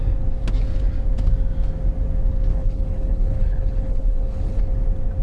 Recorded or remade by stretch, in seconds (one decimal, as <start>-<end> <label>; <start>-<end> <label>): 0.0-2.5 recorded; 2.5-4.6 remade; 4.6-5.2 recorded